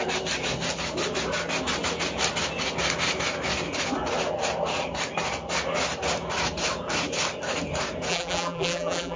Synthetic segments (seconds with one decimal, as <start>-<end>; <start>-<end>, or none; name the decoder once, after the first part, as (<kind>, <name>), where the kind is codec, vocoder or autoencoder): 8.1-9.2 (vocoder, BigVGAN v2)